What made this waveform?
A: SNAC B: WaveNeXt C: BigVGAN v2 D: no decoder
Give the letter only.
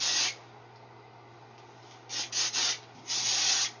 D